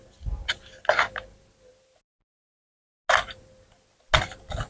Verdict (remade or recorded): recorded